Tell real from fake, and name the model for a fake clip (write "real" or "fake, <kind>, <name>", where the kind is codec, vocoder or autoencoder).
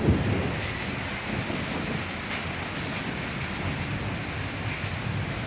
real